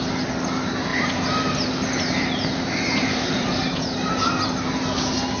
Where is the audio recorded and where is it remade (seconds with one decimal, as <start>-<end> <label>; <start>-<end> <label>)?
0.0-0.9 recorded; 0.9-4.1 remade; 4.1-5.4 recorded